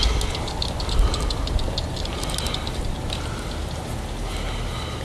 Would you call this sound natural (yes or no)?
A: yes